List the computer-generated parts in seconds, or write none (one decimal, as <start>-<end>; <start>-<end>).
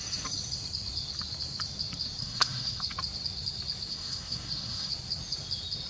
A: 2.2-2.8; 3.9-4.9